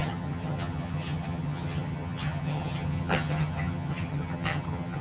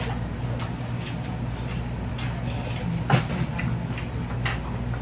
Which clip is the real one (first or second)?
second